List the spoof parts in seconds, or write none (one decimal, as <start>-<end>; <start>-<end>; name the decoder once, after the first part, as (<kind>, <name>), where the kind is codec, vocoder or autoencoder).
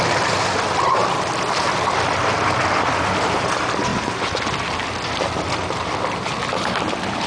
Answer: none